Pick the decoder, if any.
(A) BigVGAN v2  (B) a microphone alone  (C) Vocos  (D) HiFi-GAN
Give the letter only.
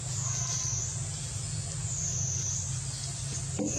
B